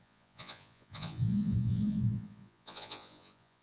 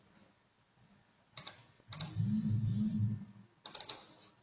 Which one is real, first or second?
second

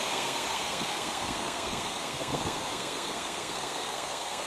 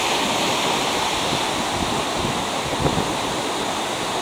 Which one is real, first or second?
second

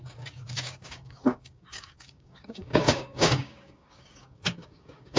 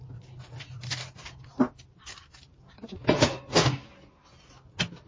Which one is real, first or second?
second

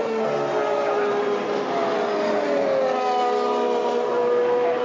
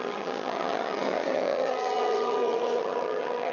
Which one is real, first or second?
first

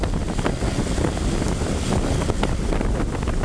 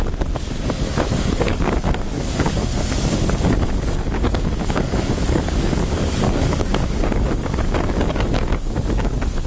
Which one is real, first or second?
first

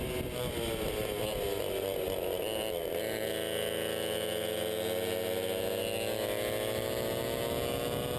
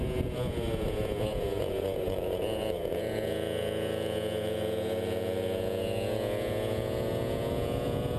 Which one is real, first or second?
first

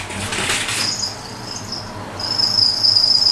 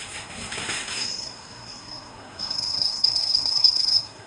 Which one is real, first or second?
first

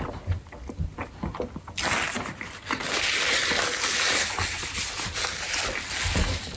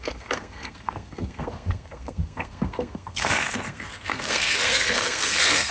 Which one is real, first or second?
first